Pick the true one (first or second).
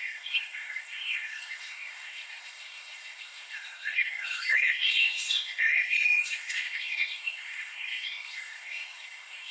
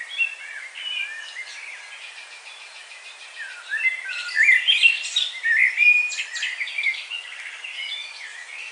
second